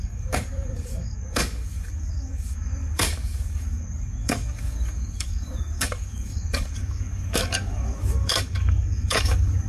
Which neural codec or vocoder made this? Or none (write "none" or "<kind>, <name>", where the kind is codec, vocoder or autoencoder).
codec, DAC